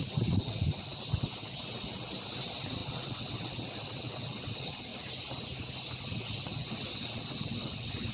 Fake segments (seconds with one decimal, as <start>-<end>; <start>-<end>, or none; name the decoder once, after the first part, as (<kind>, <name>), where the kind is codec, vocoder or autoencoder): 0.0-4.9 (vocoder, WaveNeXt); 6.0-8.1

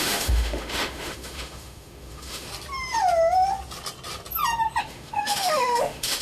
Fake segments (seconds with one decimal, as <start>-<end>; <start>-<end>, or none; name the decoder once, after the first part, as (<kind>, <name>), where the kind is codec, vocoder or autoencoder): 0.0-2.5 (autoencoder, DAC-VAE); 4.8-6.2